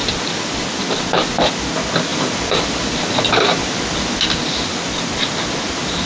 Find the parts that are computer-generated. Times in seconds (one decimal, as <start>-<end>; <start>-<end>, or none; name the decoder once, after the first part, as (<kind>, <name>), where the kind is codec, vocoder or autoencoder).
none